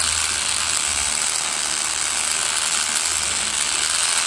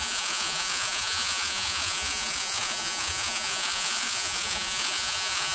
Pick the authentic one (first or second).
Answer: first